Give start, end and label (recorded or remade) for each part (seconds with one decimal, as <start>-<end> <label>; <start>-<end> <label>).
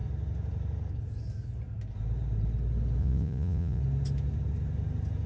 0.0-3.0 recorded; 3.0-3.8 remade; 3.8-5.3 recorded